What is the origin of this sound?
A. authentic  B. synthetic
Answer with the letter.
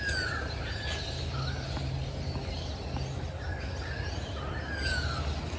A